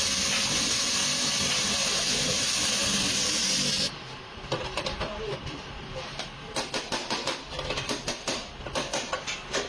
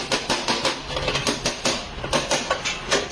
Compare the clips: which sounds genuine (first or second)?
second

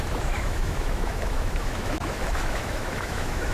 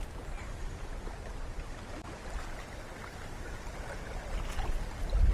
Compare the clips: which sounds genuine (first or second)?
second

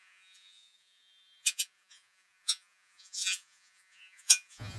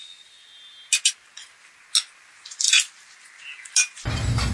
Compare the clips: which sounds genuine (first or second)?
second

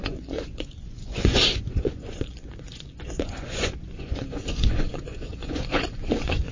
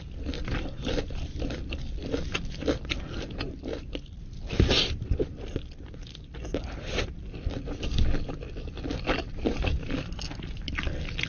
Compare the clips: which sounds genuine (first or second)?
second